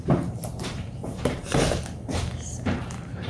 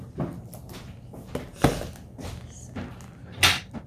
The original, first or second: second